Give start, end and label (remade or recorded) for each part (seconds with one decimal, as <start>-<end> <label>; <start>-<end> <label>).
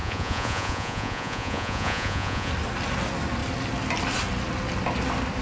0.0-2.5 remade; 2.5-5.4 recorded